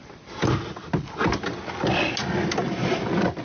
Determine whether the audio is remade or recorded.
recorded